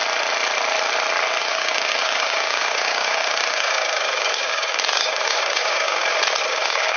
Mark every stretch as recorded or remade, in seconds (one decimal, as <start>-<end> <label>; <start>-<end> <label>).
0.0-1.4 recorded; 1.4-6.0 remade; 6.0-6.5 recorded; 6.5-7.0 remade